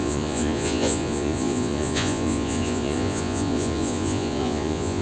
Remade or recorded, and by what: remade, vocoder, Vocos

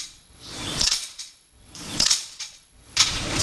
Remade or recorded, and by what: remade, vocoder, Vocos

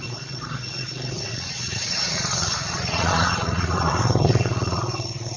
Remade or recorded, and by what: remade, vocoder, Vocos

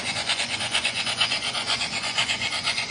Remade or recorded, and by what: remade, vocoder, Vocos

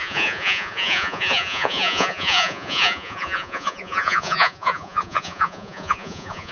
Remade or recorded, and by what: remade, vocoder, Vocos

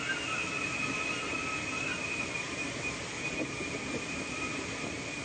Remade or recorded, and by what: recorded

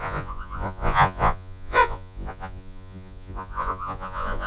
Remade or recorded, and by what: remade, vocoder, Vocos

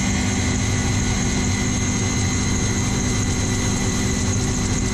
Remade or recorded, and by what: recorded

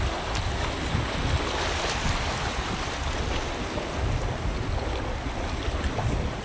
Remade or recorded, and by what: recorded